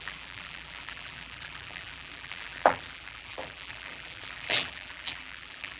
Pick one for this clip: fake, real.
fake